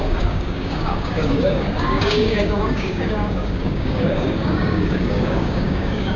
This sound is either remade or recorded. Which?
remade